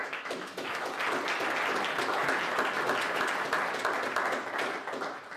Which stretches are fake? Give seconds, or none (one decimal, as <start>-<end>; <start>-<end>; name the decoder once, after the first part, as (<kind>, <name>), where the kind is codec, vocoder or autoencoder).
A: 0.0-0.9 (autoencoder, DAC-VAE)